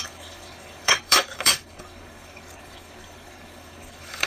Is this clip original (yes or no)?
no